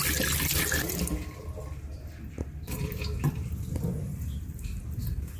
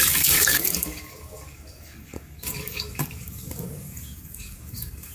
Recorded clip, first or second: first